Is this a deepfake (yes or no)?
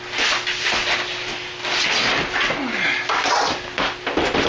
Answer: no